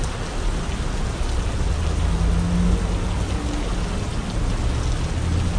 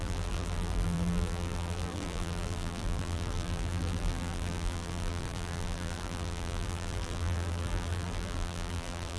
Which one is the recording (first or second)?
first